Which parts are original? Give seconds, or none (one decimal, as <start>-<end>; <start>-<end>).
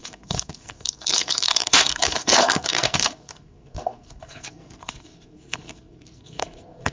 none